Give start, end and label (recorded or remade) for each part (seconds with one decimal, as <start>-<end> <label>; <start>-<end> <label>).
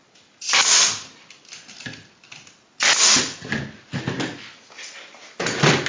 0.0-5.9 recorded